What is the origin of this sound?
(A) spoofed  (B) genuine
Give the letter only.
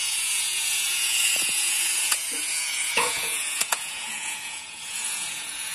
A